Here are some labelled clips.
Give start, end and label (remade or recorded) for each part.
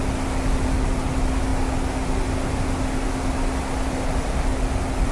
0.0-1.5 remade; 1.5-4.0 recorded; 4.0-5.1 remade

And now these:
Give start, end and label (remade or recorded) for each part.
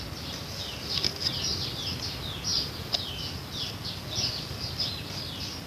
0.0-2.5 recorded; 2.5-3.1 remade; 3.1-5.7 recorded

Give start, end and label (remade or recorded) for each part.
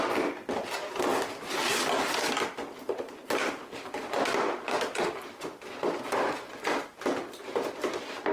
0.0-8.3 recorded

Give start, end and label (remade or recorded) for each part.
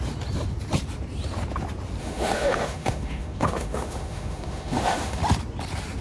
0.0-2.0 recorded; 2.0-5.2 remade; 5.2-6.0 recorded